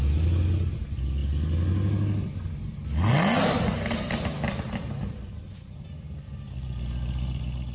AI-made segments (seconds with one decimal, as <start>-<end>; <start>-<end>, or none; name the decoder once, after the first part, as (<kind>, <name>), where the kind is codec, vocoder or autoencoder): none